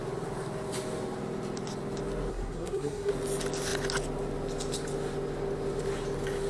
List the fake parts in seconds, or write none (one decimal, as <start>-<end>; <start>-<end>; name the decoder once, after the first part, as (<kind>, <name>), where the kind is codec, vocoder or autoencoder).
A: 2.3-3.1 (codec, SNAC)